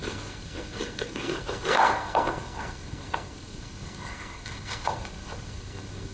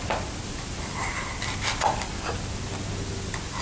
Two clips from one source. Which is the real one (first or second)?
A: second